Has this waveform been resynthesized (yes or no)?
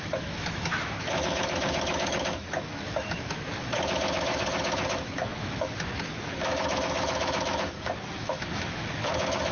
yes